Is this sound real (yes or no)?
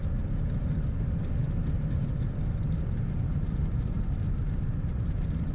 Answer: yes